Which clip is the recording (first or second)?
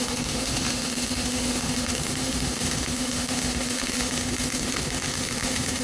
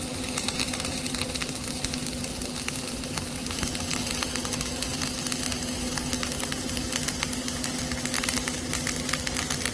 second